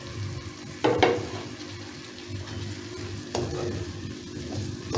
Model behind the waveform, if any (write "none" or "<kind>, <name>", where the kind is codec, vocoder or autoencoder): none